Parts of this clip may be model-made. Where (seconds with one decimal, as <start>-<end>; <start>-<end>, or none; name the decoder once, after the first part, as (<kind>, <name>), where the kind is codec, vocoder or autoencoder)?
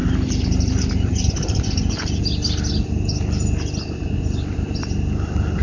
none